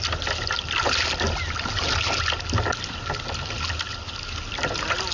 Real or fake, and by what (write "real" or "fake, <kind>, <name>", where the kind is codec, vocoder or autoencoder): real